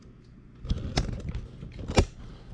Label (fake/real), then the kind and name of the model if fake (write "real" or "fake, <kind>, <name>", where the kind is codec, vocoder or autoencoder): real